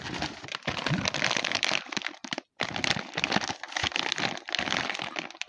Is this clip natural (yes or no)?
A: yes